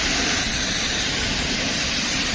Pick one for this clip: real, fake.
fake